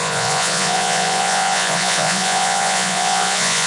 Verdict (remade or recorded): remade